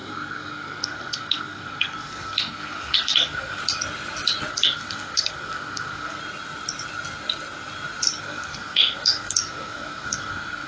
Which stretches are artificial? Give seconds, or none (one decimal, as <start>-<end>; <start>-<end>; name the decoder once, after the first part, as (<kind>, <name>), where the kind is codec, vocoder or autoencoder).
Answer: 0.0-3.6 (codec, SNAC); 4.5-6.2; 8.2-10.7